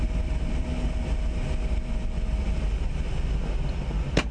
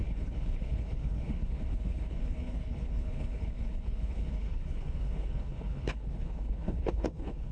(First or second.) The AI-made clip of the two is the second